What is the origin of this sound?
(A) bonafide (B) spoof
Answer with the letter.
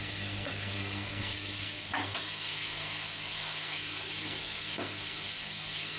B